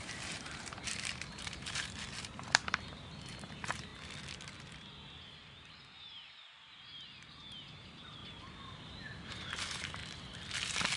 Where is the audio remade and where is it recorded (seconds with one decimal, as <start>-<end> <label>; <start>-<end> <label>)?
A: 0.0-3.9 remade; 3.9-7.5 recorded; 7.5-8.2 remade; 8.2-9.3 recorded; 9.3-10.0 remade; 10.0-11.0 recorded